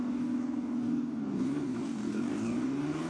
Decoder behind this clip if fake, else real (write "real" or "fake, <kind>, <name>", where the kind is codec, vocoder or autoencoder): fake, codec, DAC